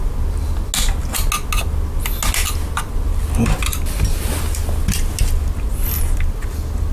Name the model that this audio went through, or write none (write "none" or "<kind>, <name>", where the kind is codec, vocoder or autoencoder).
none